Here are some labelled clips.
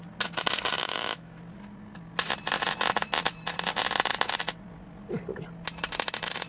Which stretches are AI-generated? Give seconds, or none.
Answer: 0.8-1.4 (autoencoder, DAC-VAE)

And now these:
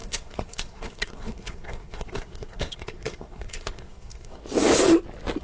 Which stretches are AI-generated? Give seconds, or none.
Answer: 0.0-4.4 (codec, SNAC)

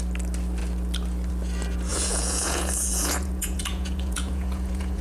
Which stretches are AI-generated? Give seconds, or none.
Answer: 1.9-5.0 (vocoder, Vocos)

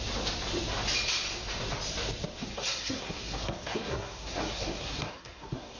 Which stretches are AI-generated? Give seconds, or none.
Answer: 2.5-5.8 (codec, SNAC)

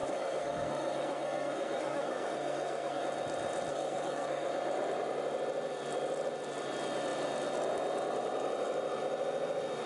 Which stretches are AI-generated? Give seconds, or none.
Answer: 0.0-3.0 (codec, SNAC); 3.7-4.5